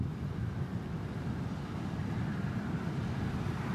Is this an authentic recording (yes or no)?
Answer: yes